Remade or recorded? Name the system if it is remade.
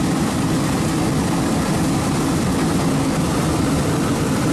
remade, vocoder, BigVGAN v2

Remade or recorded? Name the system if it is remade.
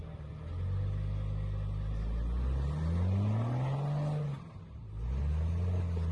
recorded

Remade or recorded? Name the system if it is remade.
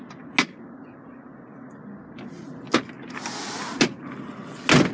recorded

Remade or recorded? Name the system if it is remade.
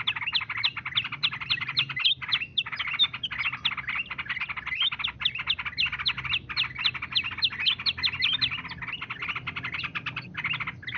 recorded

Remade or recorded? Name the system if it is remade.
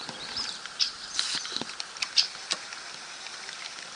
remade, vocoder, BigVGAN v2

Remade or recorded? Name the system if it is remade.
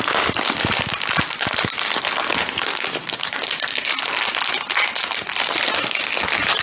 recorded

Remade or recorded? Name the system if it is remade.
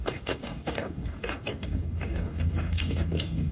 remade, codec, DAC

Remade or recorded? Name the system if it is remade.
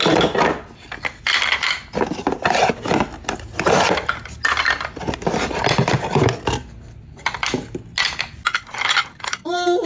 recorded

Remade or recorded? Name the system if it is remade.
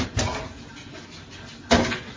recorded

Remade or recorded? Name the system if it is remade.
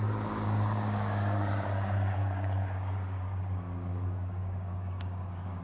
remade, codec, DAC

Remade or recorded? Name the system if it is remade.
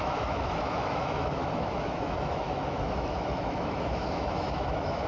remade, autoencoder, DAC-VAE